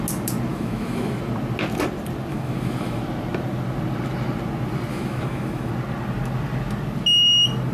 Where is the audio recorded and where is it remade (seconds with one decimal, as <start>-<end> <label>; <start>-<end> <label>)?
0.0-0.5 recorded; 0.5-1.2 remade; 1.2-2.3 recorded; 2.3-3.0 remade; 3.0-4.9 recorded; 4.9-5.7 remade; 5.7-7.7 recorded

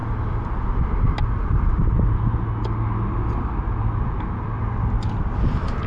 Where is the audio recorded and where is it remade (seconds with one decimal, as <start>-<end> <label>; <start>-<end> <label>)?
0.0-5.9 recorded

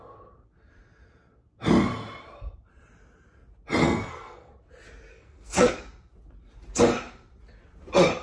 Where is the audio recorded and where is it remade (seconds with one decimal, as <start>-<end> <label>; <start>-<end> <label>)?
0.0-3.8 recorded; 3.8-4.5 remade; 4.5-5.1 recorded; 5.1-5.8 remade; 5.8-8.2 recorded

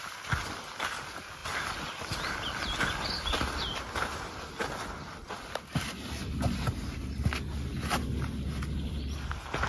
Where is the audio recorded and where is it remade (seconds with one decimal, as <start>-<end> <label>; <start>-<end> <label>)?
0.0-9.7 recorded

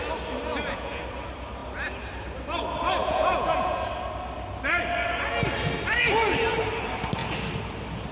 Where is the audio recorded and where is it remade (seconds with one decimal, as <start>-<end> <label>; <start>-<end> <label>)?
0.0-0.5 recorded; 0.5-1.0 remade; 1.0-3.0 recorded; 3.0-3.9 remade; 3.9-8.1 recorded

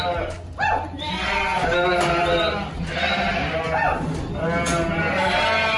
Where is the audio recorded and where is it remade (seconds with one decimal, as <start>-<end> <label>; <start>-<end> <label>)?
0.0-5.8 recorded